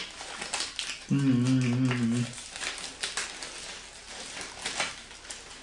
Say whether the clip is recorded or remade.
recorded